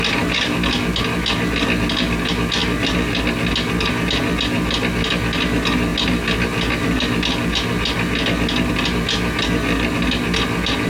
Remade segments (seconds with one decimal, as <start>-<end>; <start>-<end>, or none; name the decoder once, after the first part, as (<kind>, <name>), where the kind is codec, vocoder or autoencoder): none

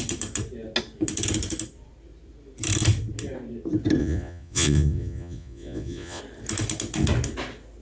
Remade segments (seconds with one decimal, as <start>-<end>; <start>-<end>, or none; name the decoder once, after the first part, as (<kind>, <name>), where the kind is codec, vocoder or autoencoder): 4.0-6.2 (vocoder, Vocos)